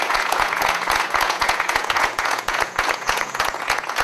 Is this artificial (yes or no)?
yes